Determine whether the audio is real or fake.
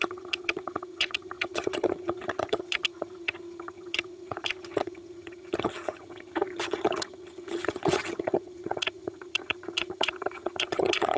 fake